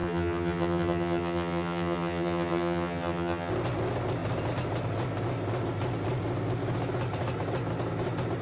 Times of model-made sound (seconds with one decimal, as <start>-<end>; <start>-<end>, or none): 0.0-3.5